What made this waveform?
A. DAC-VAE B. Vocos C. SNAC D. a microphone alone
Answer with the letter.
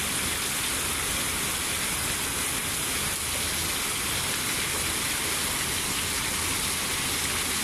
D